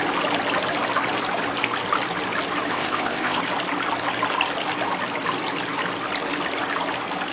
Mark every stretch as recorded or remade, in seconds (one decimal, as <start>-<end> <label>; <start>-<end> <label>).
0.0-2.7 recorded; 2.7-3.4 remade; 3.4-7.3 recorded